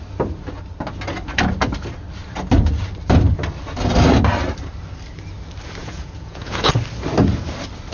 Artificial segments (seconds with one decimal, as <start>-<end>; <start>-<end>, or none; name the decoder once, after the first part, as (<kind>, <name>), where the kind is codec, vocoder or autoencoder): 5.8-6.7 (vocoder, Vocos)